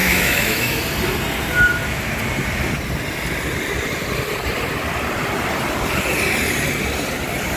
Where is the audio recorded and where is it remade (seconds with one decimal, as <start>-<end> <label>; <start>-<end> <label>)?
0.0-0.8 remade; 0.8-7.6 recorded